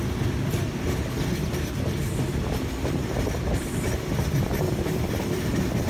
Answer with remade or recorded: recorded